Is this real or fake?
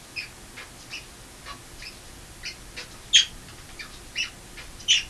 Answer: real